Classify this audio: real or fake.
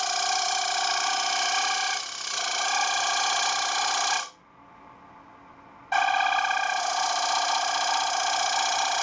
real